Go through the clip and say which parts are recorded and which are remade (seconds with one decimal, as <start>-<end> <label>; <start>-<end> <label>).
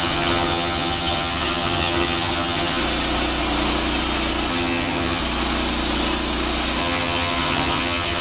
0.0-2.8 remade; 2.8-4.5 recorded; 4.5-5.2 remade; 5.2-6.8 recorded; 6.8-8.2 remade